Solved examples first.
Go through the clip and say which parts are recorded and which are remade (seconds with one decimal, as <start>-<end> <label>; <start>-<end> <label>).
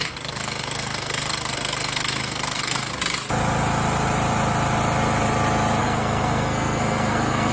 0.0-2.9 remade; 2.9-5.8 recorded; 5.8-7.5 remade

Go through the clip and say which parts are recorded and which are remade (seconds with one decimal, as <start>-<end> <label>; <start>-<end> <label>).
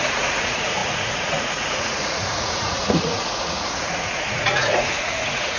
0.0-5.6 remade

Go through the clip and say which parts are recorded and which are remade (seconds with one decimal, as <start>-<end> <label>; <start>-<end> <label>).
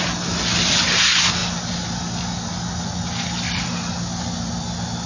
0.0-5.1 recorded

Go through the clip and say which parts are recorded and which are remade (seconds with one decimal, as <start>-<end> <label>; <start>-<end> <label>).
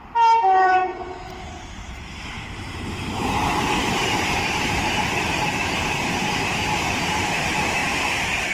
0.0-0.8 remade; 0.8-2.2 recorded; 2.2-8.5 remade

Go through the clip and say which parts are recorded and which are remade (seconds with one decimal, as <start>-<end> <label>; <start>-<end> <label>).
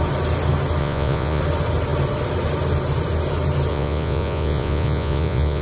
0.0-0.8 recorded; 0.8-1.4 remade; 1.4-3.7 recorded; 3.7-5.6 remade